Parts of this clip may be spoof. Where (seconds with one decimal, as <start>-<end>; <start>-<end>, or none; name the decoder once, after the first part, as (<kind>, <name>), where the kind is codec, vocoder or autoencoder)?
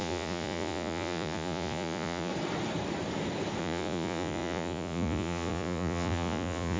0.0-2.3 (vocoder, Vocos); 3.6-6.8